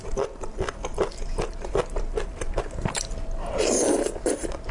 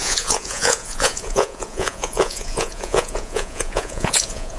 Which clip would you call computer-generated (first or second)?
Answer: second